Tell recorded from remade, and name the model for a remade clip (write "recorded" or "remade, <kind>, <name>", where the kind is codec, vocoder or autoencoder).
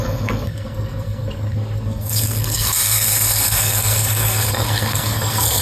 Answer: remade, codec, SNAC